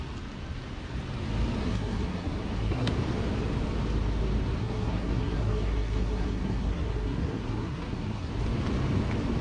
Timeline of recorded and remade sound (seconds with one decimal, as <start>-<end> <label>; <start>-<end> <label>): 0.0-1.6 recorded; 1.6-2.9 remade; 2.9-4.6 recorded; 4.6-8.3 remade; 8.3-9.4 recorded

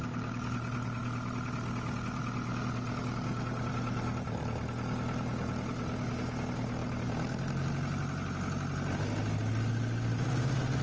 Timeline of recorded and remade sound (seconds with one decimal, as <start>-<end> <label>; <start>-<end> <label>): 0.0-10.8 recorded